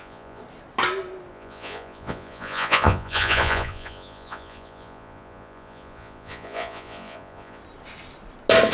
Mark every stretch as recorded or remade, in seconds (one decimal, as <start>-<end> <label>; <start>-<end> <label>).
0.0-0.4 remade; 0.4-1.3 recorded; 1.3-7.6 remade; 7.6-8.7 recorded